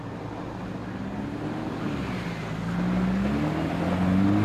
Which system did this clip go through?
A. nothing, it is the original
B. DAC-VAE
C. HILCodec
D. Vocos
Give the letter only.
A